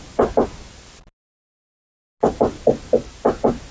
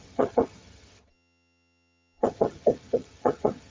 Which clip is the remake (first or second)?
second